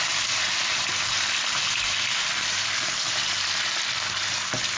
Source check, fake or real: fake